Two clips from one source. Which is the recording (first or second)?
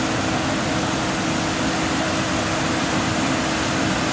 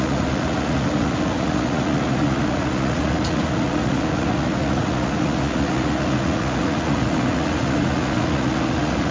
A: first